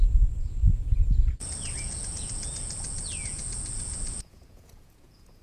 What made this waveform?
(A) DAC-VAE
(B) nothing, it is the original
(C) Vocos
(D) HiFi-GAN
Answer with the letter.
C